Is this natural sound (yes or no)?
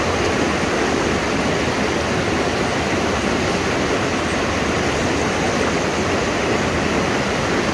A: yes